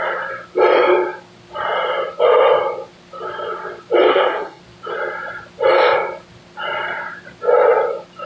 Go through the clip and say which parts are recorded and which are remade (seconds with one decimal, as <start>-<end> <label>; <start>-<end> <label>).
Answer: 0.0-4.1 recorded; 4.1-4.6 remade; 4.6-8.3 recorded